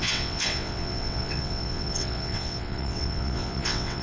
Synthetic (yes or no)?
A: yes